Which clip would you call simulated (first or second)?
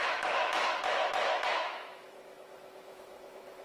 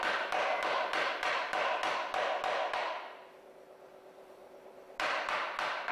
first